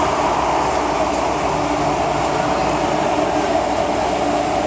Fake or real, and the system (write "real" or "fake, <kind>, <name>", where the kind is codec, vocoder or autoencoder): real